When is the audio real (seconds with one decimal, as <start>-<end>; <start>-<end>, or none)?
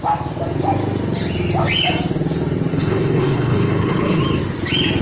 0.0-2.7; 4.2-5.0